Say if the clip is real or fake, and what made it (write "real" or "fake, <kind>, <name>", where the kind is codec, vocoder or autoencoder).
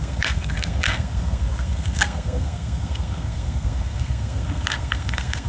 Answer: fake, codec, SNAC